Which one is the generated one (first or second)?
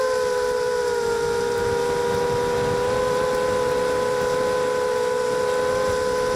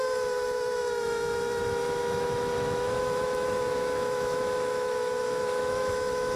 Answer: second